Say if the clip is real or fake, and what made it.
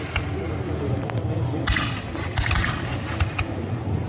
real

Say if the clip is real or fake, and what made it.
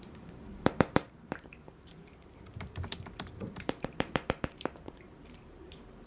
fake, vocoder, BigVGAN v2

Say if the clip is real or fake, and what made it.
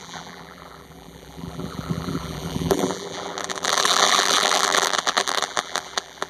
fake, vocoder, BigVGAN v2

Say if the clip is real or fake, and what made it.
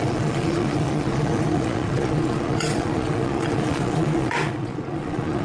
fake, vocoder, Vocos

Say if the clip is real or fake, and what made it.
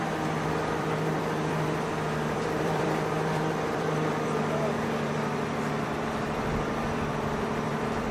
fake, vocoder, BigVGAN v2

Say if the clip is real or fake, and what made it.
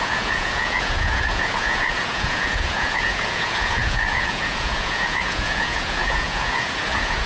fake, vocoder, Vocos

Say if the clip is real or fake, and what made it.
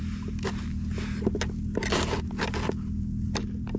real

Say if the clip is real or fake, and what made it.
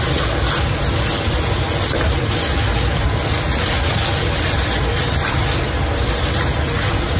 real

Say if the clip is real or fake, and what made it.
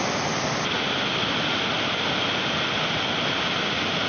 real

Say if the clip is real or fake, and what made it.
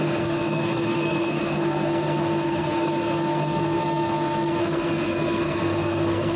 fake, codec, SNAC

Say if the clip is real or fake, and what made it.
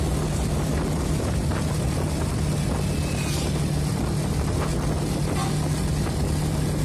real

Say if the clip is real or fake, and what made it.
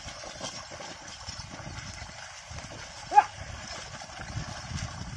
real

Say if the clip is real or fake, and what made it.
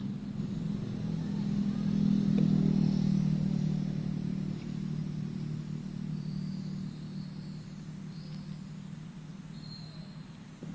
real